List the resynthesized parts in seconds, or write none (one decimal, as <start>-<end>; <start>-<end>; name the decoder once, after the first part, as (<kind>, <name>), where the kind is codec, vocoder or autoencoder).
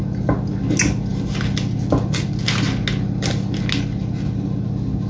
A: none